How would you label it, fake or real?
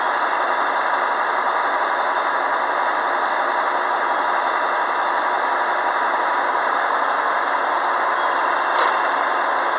real